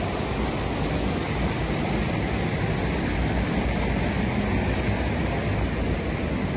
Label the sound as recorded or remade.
recorded